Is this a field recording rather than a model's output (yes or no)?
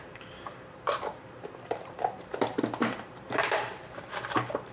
no